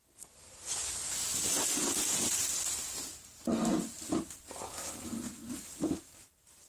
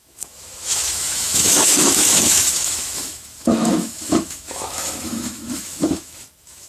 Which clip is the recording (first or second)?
first